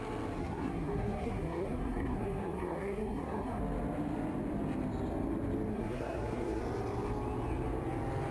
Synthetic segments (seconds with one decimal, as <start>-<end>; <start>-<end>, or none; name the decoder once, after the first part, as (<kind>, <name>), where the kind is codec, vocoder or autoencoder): 0.4-3.6 (codec, SNAC); 5.7-6.6

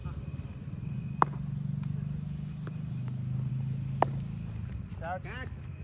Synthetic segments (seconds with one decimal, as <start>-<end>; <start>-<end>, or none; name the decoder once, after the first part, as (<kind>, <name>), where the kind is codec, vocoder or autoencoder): none

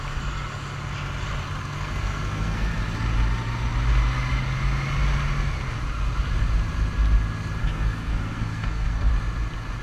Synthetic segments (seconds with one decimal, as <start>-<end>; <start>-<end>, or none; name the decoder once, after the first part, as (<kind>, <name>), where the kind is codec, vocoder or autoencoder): 1.6-2.8 (codec, SNAC); 7.6-9.1

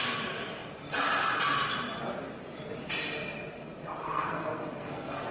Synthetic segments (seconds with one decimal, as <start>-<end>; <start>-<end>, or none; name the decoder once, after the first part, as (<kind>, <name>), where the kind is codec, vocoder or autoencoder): 4.0-5.3 (codec, SNAC)